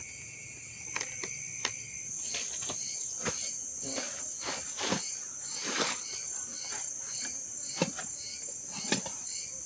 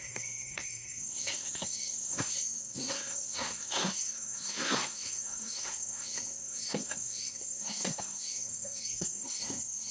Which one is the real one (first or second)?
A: first